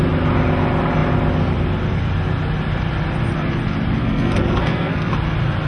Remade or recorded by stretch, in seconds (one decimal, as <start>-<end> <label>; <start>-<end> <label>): 0.0-4.0 recorded; 4.0-5.1 remade; 5.1-5.7 recorded

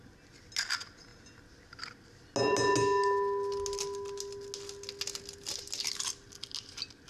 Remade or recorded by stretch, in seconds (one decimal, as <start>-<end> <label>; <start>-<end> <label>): 0.0-7.1 recorded